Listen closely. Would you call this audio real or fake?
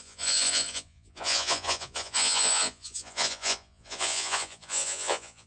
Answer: fake